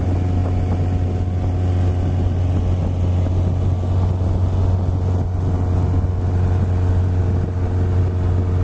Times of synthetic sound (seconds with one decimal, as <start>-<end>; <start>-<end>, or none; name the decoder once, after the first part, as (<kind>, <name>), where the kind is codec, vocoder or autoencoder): none